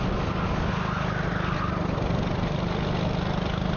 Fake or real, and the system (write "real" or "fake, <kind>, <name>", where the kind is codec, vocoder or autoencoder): real